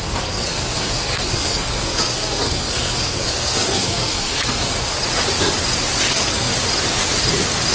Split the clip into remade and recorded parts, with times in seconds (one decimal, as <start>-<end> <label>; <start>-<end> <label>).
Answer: 0.0-5.0 remade; 5.0-6.1 recorded; 6.1-6.5 remade; 6.5-7.7 recorded